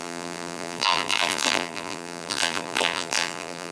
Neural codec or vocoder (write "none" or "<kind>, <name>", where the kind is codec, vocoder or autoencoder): vocoder, BigVGAN v2